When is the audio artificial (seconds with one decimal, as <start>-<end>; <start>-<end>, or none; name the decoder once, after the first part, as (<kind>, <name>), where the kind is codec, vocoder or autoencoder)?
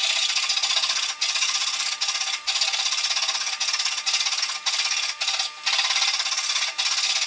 none